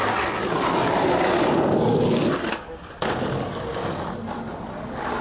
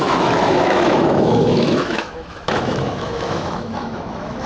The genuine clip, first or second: first